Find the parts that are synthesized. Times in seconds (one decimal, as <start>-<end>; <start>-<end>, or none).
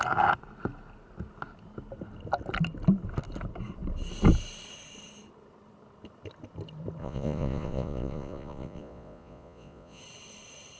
7.0-10.0